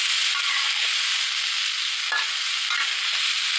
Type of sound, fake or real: real